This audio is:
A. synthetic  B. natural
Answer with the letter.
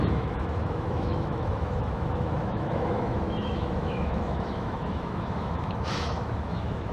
A